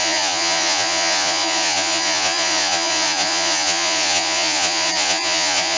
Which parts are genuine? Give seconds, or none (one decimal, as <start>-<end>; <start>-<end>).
none